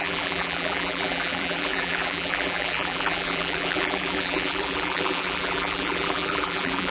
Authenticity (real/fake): fake